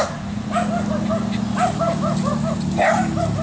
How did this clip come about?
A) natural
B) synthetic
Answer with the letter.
A